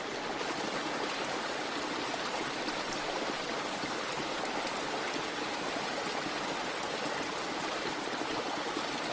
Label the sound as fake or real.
real